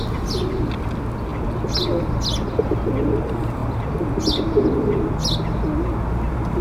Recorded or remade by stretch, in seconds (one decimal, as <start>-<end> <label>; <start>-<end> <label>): 0.0-3.6 recorded; 3.6-5.1 remade; 5.1-6.6 recorded